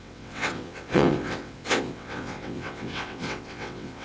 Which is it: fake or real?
fake